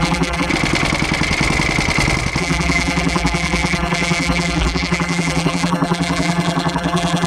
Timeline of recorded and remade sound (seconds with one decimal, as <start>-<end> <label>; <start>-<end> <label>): 0.0-0.5 remade; 0.5-2.4 recorded; 2.4-7.3 remade